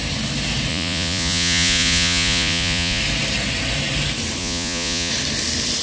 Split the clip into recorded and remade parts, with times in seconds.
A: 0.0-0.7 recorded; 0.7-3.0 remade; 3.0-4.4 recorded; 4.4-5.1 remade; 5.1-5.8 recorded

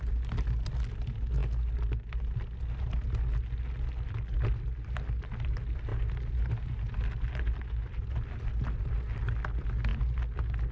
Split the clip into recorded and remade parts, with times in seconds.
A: 0.0-10.7 recorded

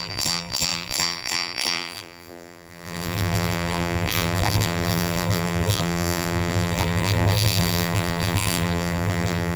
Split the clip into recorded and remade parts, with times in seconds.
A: 0.0-9.6 remade

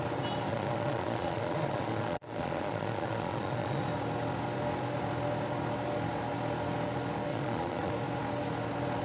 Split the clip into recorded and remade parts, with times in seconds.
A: 0.0-0.5 recorded; 0.5-3.8 remade; 3.8-7.3 recorded; 7.3-7.9 remade; 7.9-9.0 recorded

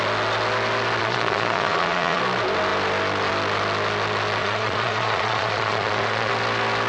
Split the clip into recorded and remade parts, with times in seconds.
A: 0.0-1.0 recorded; 1.0-2.2 remade; 2.2-4.4 recorded; 4.4-6.3 remade; 6.3-6.9 recorded